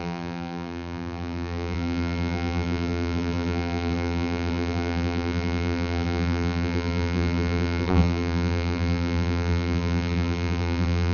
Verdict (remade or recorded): remade